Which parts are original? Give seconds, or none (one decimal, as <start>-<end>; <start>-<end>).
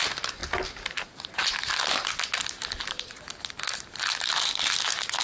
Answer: 0.0-5.2